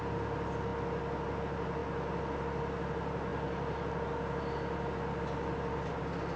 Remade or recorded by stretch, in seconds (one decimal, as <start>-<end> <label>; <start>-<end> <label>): 0.0-6.4 recorded